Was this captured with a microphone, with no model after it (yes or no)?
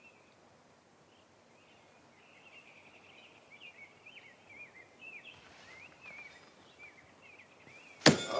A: yes